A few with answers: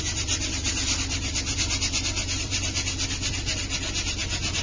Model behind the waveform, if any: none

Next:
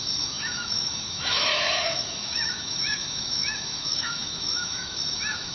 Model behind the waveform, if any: autoencoder, DAC-VAE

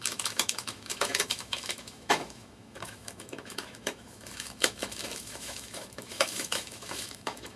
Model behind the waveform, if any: autoencoder, DAC-VAE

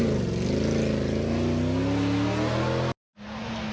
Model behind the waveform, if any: none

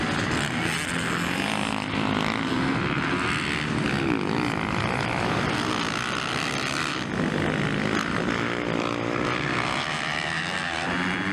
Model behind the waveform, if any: none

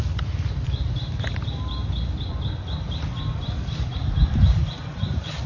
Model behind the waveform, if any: none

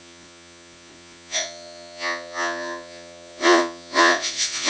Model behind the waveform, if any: vocoder, Vocos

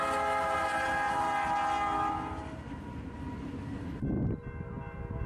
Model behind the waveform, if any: none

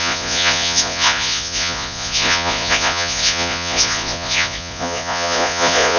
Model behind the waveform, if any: vocoder, Vocos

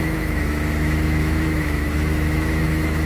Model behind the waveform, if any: autoencoder, DAC-VAE